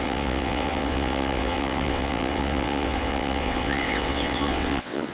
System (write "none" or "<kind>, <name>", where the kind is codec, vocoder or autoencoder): vocoder, WaveNeXt